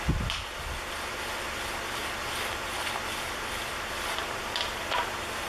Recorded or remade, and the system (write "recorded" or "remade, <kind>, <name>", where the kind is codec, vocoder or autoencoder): remade, vocoder, BigVGAN v2